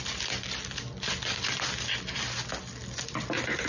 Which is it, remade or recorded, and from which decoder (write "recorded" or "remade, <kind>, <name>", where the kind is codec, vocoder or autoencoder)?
recorded